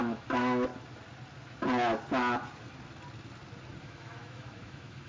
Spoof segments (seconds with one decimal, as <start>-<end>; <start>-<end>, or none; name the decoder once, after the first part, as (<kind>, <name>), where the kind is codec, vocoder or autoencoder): 0.0-0.7 (autoencoder, DAC-VAE); 3.8-5.1